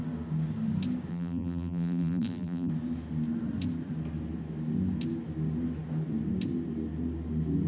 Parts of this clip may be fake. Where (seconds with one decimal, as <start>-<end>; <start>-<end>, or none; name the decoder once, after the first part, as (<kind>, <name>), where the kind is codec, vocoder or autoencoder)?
1.1-2.7 (vocoder, BigVGAN v2)